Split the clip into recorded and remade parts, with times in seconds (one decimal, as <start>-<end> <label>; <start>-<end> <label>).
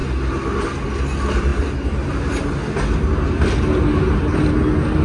0.0-5.0 recorded